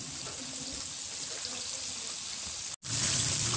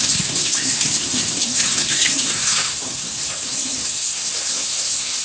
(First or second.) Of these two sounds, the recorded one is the first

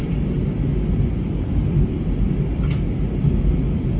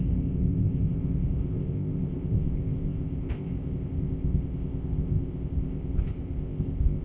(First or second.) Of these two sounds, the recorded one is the first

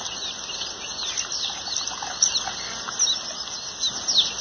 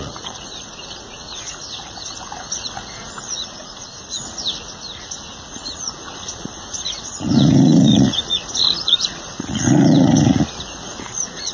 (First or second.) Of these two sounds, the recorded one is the first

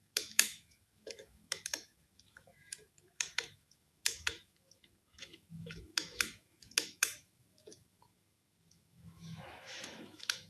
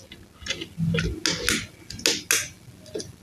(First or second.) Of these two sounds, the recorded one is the second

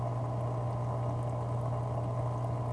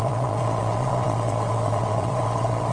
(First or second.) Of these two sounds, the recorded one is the first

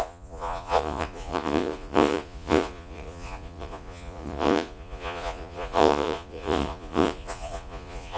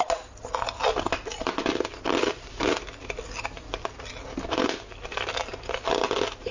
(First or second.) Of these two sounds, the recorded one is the second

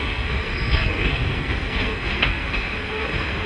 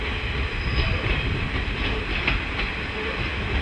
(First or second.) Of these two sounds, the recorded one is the second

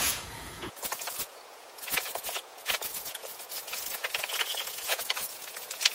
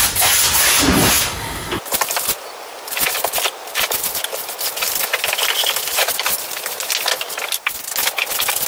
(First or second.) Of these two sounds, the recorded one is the second